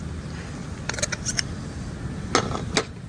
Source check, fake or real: real